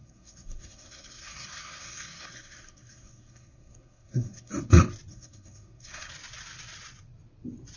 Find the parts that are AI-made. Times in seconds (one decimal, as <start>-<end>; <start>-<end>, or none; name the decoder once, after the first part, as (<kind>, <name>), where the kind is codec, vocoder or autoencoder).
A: 0.0-4.5 (codec, SNAC); 5.1-6.1